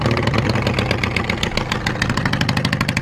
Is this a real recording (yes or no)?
yes